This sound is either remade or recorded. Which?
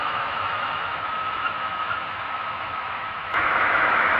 remade